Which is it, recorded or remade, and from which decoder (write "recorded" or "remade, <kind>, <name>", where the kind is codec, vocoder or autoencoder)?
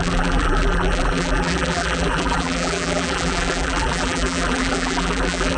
remade, vocoder, BigVGAN v2